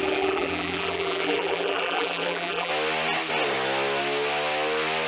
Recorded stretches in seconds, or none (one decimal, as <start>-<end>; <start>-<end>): 2.7-5.1